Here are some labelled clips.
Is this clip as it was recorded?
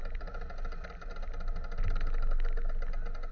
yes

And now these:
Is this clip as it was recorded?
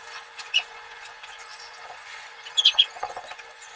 no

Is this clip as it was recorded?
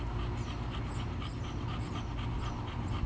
yes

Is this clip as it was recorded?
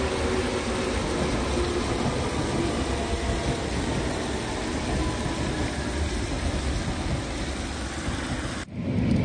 yes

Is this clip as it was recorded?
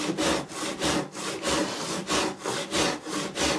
yes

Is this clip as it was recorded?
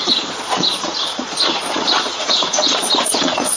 no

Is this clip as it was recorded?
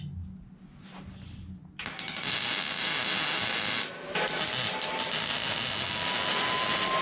yes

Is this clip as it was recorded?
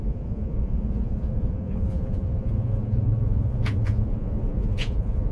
no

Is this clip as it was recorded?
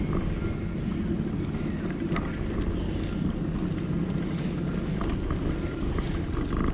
yes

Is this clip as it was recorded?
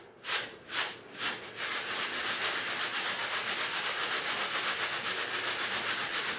yes